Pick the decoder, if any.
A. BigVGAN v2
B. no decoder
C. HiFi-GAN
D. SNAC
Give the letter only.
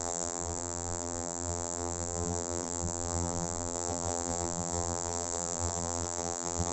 A